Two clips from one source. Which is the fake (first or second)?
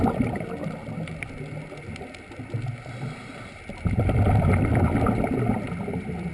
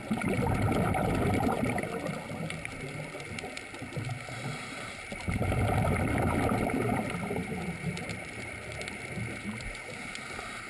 second